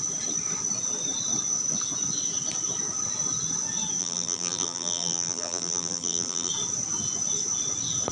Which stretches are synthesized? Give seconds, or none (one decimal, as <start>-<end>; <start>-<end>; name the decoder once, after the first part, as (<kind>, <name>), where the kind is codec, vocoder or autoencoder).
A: 4.0-6.5 (vocoder, BigVGAN v2)

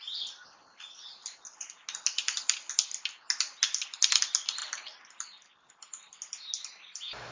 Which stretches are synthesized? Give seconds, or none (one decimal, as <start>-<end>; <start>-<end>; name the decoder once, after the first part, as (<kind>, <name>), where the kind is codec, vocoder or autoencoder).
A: none

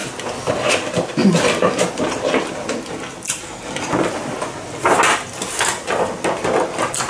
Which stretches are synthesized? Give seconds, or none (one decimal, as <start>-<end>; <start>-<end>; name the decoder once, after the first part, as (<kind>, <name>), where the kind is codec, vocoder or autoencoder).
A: 0.0-0.5 (vocoder, BigVGAN v2)

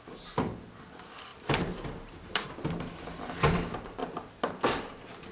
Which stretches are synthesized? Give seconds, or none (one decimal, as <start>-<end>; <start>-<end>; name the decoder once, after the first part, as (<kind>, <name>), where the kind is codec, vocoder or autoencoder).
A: 1.3-2.5 (vocoder, BigVGAN v2); 4.0-4.5

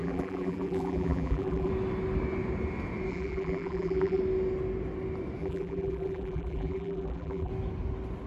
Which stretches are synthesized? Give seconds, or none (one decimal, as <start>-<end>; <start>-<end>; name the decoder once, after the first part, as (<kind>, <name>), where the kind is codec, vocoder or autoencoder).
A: 0.0-1.7 (vocoder, BigVGAN v2); 3.1-4.2; 5.4-7.5